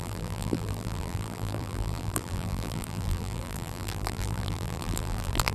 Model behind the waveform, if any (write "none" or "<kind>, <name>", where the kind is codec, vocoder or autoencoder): vocoder, BigVGAN v2